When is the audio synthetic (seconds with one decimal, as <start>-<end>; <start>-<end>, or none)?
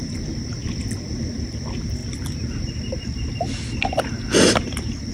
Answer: 0.0-2.0